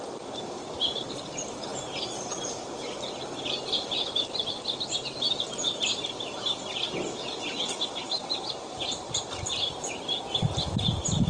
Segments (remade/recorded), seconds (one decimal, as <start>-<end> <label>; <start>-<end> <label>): 0.0-11.3 recorded